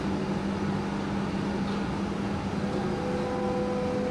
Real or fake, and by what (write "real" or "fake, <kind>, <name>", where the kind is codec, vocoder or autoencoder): real